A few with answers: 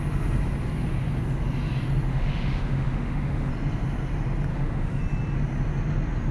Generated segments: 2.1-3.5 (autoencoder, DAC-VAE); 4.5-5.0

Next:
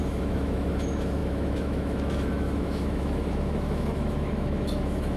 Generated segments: 0.0-5.2 (autoencoder, DAC-VAE)

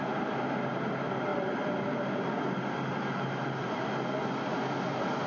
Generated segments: none

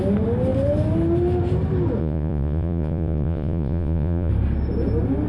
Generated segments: 2.0-4.3 (vocoder, Vocos)

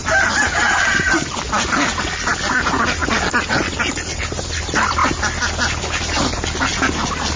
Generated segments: none

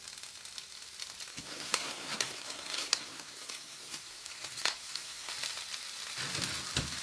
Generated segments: 1.3-5.3 (codec, SNAC)

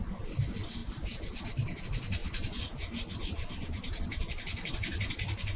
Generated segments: none

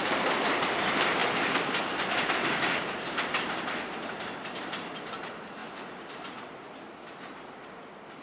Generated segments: none